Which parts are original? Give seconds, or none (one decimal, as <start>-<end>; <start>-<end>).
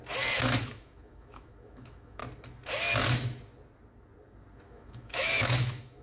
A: 0.0-0.6; 2.2-4.7